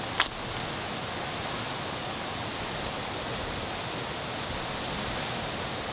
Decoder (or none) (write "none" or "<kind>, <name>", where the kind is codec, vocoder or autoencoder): none